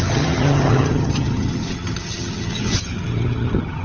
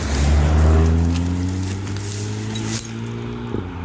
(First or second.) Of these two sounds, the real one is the second